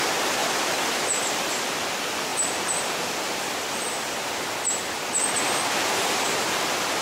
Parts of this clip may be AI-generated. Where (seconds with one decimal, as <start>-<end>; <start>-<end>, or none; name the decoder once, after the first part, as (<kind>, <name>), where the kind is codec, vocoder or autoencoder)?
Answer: 0.4-1.2 (vocoder, BigVGAN v2); 2.3-6.5